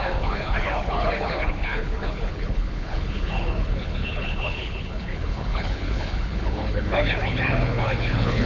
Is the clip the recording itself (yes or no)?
no